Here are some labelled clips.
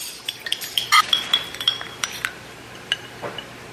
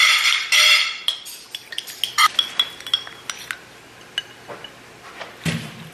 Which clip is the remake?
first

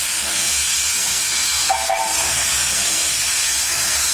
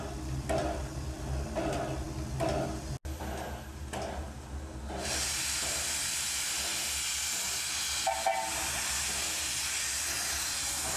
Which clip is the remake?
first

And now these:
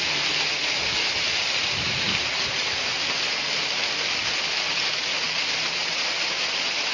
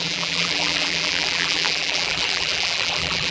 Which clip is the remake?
second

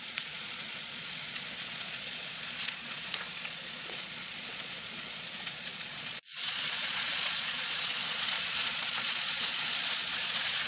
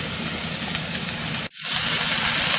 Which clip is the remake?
first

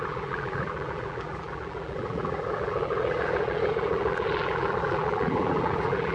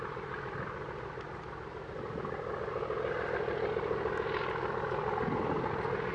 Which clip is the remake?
first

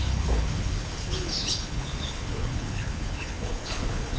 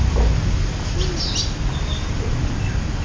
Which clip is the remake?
first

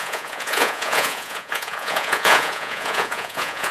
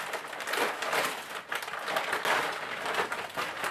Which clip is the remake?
first